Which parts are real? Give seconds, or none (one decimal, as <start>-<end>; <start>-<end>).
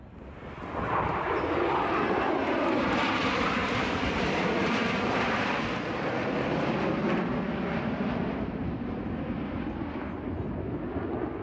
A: 0.0-3.6; 5.8-11.4